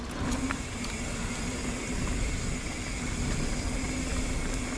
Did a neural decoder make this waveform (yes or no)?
no